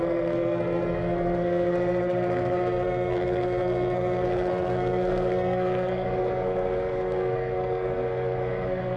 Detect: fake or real fake